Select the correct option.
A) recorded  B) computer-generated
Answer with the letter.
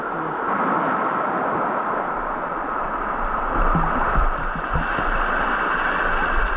A